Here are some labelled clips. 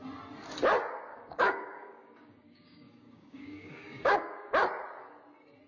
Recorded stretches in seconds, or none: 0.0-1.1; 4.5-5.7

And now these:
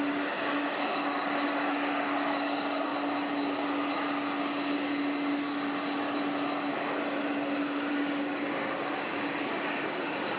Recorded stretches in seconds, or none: 2.9-7.9